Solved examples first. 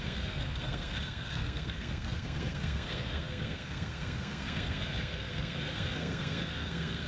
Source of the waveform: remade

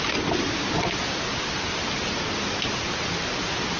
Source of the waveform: recorded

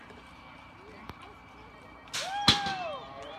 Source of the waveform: recorded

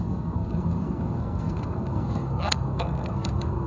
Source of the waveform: remade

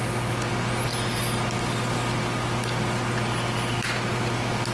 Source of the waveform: recorded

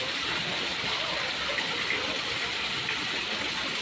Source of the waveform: recorded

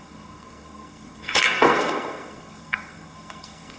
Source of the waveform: remade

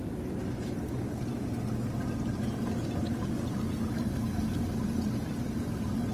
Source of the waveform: recorded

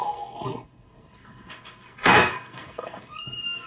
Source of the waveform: remade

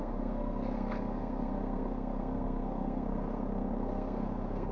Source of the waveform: remade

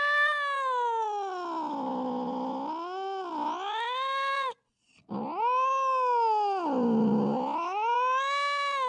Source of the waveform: recorded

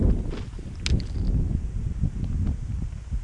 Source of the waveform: recorded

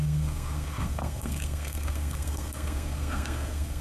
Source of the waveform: remade